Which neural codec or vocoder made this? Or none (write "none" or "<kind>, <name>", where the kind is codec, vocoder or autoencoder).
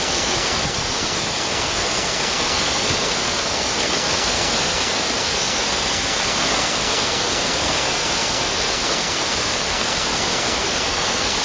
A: codec, SNAC